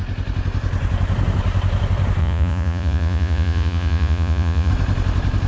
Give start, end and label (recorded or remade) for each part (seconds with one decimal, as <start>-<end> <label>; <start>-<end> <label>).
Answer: 0.0-2.2 recorded; 2.2-4.7 remade; 4.7-5.5 recorded